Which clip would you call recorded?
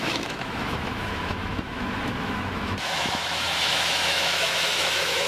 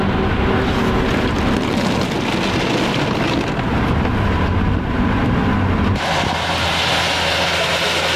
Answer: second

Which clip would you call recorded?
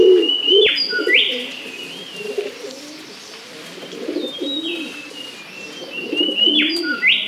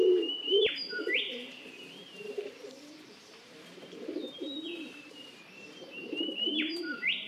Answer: first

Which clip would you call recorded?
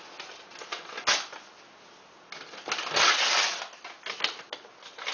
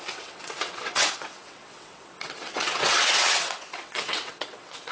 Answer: first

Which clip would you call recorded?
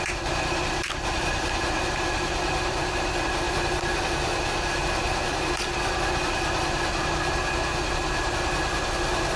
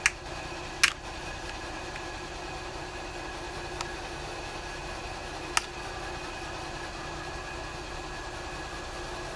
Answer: second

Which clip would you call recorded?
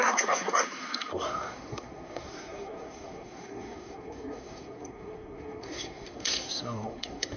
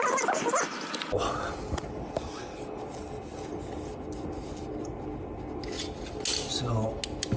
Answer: second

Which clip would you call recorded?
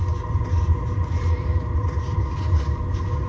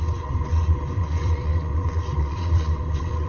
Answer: first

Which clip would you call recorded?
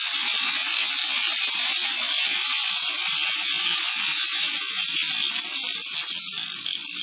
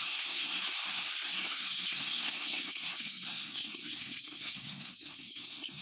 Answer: first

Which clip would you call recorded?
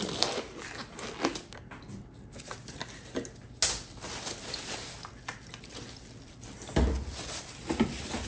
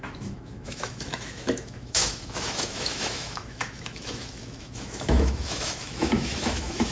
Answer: first